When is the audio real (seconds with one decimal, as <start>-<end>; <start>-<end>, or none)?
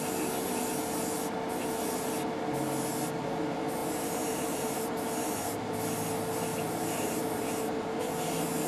0.0-3.8; 5.8-6.5; 7.2-8.7